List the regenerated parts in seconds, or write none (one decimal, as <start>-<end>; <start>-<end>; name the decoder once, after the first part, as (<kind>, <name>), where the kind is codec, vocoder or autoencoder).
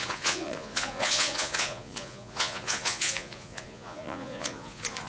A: 0.0-5.1 (vocoder, Vocos)